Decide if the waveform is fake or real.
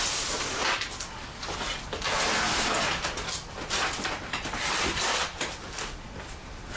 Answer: real